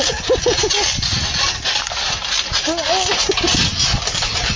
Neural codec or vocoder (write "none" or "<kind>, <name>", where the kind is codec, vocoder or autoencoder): none